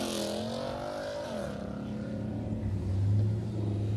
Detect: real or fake real